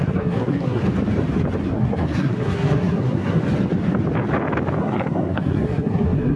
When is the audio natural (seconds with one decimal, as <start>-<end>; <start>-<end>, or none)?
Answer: 0.8-1.6; 3.4-4.8